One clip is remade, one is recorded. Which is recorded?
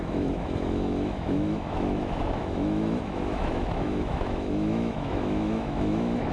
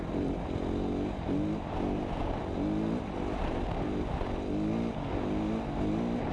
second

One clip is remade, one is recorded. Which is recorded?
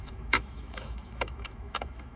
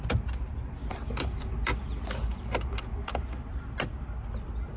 second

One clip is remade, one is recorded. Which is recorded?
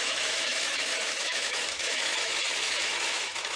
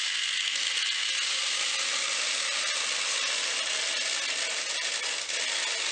second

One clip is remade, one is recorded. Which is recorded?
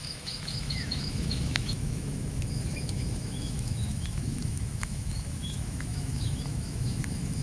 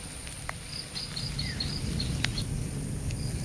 second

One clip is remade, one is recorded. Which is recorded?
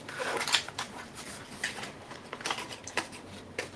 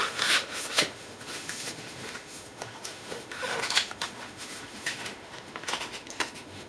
first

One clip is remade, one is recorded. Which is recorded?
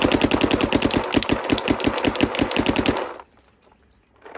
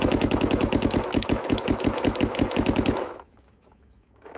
first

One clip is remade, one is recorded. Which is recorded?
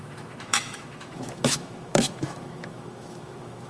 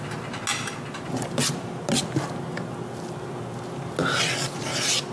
second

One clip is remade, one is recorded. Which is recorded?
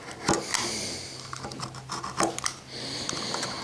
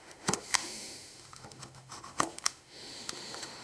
first